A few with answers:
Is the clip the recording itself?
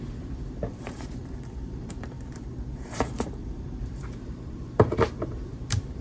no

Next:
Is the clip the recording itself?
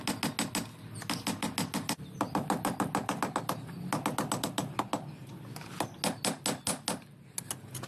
yes